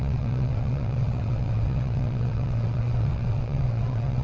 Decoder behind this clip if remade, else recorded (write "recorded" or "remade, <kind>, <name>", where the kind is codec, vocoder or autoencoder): remade, vocoder, WaveNeXt